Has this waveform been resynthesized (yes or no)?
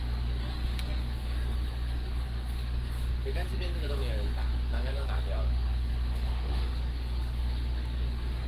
yes